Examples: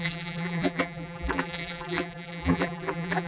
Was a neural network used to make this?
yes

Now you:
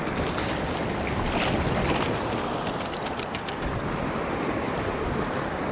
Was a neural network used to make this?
no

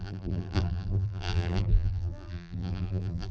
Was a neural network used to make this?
yes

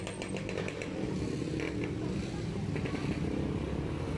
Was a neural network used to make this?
no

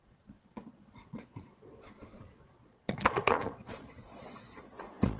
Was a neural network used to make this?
yes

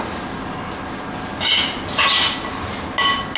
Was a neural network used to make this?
no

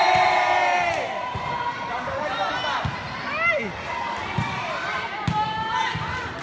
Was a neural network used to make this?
no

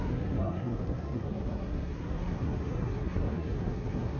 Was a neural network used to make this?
yes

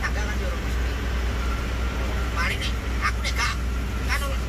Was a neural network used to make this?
no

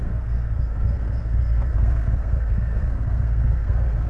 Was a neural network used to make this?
yes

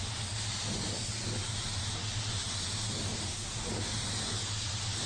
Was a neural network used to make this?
no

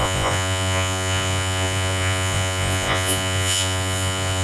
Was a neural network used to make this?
yes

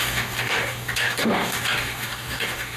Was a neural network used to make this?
yes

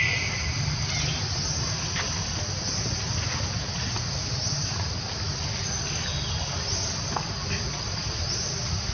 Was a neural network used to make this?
no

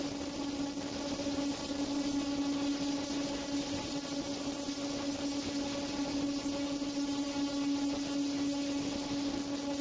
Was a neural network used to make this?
no